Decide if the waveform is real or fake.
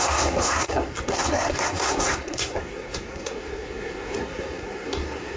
fake